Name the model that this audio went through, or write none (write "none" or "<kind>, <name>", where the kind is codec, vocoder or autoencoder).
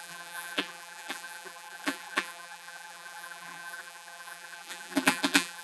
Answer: vocoder, BigVGAN v2